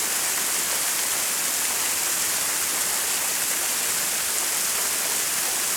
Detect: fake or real real